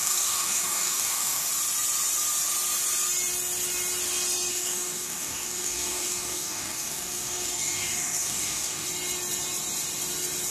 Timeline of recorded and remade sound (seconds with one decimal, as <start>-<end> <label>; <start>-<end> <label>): 0.0-1.5 remade; 1.5-4.5 recorded; 4.5-8.9 remade; 8.9-10.5 recorded